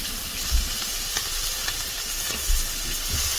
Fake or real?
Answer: real